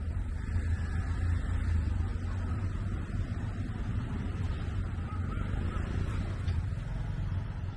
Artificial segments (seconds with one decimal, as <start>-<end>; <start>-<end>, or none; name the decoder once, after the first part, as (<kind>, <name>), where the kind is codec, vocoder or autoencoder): 2.1-4.7 (vocoder, BigVGAN v2)